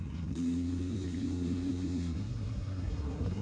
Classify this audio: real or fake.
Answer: fake